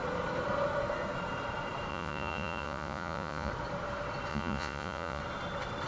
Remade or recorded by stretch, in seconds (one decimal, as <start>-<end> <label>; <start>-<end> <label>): 0.0-1.9 recorded; 1.9-3.5 remade; 3.5-4.3 recorded; 4.3-5.2 remade; 5.2-5.9 recorded